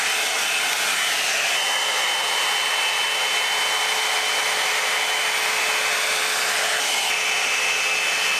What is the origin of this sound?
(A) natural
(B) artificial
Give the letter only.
A